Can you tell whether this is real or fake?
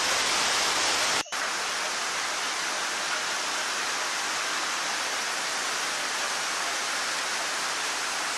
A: real